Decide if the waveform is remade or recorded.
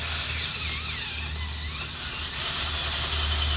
recorded